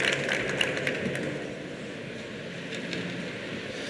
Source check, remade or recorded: recorded